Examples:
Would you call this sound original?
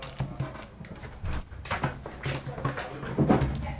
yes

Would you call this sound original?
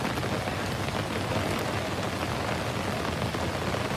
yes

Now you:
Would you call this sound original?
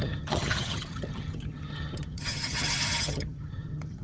no